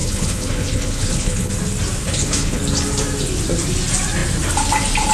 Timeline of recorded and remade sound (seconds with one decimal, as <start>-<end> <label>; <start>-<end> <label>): 0.0-1.5 remade; 1.5-2.0 recorded; 2.0-2.6 remade; 2.6-5.1 recorded